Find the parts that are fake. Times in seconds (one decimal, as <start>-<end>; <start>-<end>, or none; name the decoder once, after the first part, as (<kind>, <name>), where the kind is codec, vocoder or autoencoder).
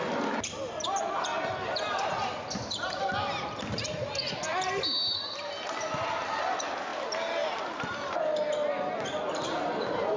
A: none